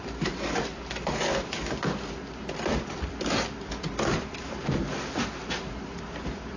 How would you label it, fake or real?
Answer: fake